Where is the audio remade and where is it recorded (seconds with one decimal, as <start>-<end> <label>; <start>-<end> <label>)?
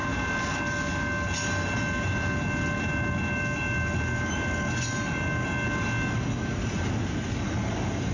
0.0-8.1 recorded